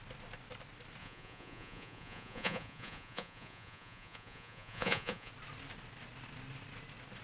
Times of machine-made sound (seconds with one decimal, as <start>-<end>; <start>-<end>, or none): 1.0-5.3